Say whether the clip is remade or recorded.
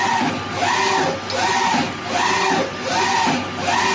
recorded